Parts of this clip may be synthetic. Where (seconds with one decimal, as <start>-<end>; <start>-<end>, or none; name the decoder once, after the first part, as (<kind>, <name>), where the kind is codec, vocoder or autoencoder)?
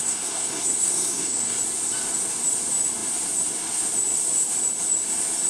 0.0-1.6 (codec, SNAC)